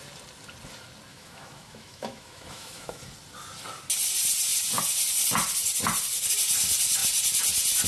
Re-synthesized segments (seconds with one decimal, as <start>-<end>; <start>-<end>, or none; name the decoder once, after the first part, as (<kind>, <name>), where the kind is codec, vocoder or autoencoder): 1.1-3.0 (autoencoder, DAC-VAE)

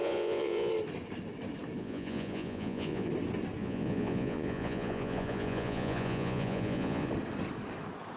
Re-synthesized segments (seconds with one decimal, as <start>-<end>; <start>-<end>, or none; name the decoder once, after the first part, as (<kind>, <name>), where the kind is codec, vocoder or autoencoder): 0.0-0.7 (vocoder, Vocos); 1.8-3.1; 3.6-7.1

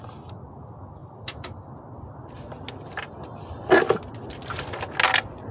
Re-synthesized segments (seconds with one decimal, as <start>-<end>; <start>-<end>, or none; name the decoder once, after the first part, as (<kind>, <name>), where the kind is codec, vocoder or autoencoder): 1.0-2.6 (vocoder, BigVGAN v2); 3.2-3.7